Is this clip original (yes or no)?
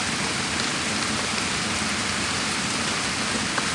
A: yes